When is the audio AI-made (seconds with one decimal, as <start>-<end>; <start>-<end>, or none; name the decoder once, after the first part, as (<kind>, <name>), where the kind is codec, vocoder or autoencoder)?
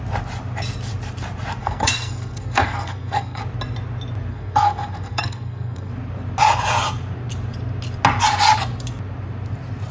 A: 1.6-3.4 (codec, SNAC); 4.3-5.9